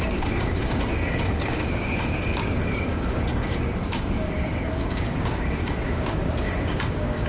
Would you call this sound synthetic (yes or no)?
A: yes